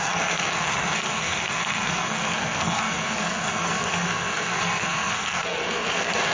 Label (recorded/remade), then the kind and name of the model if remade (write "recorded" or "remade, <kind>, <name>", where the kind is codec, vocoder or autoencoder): remade, codec, SNAC